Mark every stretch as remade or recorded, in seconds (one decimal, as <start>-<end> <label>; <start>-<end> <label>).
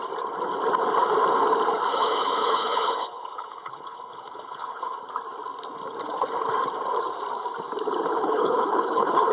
0.0-1.9 recorded; 1.9-5.1 remade; 5.1-8.1 recorded; 8.1-9.3 remade